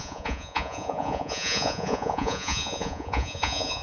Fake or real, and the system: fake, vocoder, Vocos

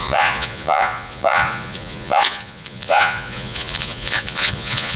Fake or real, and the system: fake, vocoder, Vocos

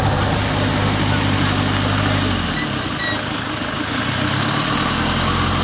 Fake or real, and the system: real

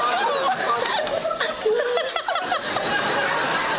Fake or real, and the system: real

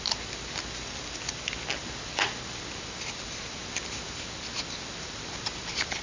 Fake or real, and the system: real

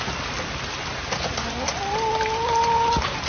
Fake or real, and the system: real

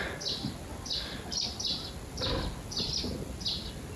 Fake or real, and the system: real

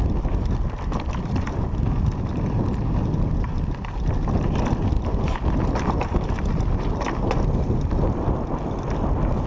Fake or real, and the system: real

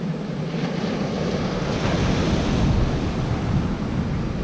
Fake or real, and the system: real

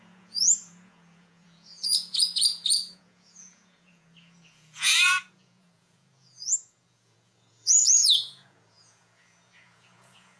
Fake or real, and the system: fake, vocoder, Vocos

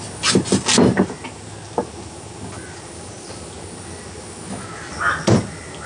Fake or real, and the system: real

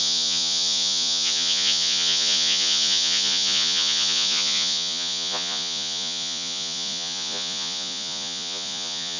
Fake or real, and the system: fake, vocoder, Vocos